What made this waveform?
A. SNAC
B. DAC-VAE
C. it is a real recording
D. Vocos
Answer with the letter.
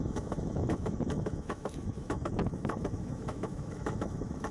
B